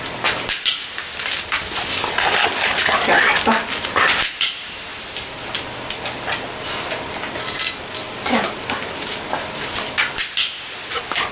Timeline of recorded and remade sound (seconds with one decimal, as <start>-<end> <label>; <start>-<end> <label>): 0.0-11.3 recorded

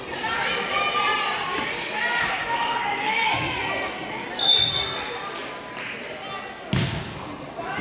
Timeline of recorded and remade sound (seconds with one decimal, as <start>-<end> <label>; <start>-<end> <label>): 0.0-2.3 recorded; 2.3-3.3 remade; 3.3-7.8 recorded

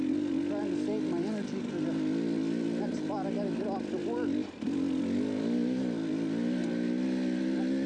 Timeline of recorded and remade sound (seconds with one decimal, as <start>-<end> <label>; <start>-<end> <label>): 0.0-7.9 recorded

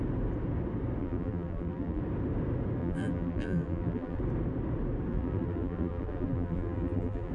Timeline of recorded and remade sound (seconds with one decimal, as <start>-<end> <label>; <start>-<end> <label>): 0.0-1.0 recorded; 1.0-2.0 remade; 2.0-2.8 recorded; 2.8-4.2 remade; 4.2-5.1 recorded; 5.1-7.3 remade

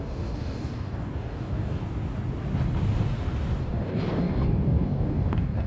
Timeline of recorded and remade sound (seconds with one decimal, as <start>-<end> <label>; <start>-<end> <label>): 0.0-1.8 remade; 1.8-3.6 recorded; 3.6-5.7 remade